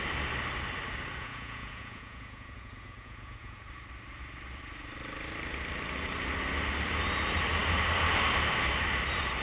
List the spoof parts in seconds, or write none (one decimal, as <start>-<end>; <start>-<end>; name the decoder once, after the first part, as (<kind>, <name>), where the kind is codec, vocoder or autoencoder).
1.2-3.7 (vocoder, Vocos)